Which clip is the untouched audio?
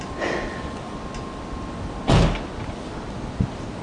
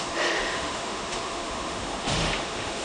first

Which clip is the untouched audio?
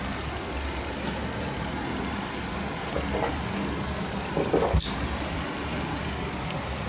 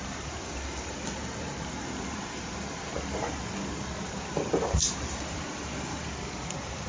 first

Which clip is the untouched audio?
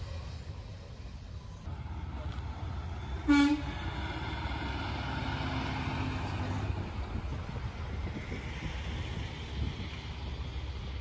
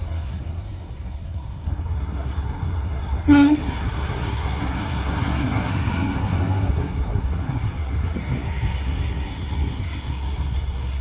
first